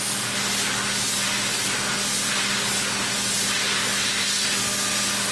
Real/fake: real